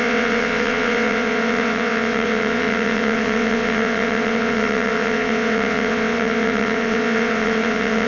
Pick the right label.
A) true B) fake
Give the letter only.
B